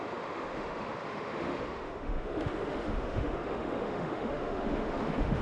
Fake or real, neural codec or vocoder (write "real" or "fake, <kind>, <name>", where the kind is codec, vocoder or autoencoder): fake, autoencoder, DAC-VAE